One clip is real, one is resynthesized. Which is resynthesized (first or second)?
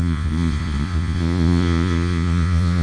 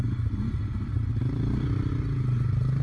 first